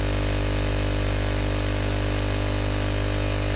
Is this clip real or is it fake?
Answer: real